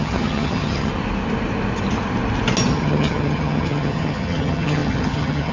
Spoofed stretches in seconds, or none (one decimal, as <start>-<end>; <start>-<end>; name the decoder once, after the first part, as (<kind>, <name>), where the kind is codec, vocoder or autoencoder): 0.0-0.9 (vocoder, HiFi-GAN); 2.7-5.5